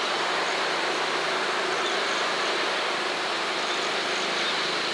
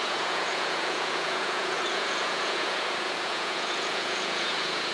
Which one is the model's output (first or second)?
second